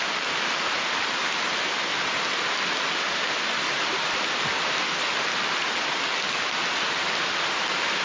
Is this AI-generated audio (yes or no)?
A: no